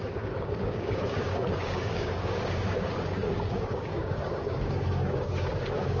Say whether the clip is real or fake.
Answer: fake